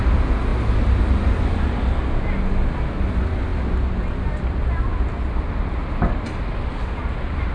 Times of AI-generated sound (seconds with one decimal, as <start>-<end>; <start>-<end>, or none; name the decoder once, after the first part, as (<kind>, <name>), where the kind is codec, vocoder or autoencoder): none